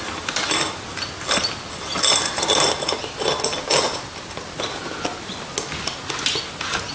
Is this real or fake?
real